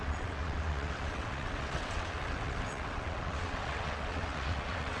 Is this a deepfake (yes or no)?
yes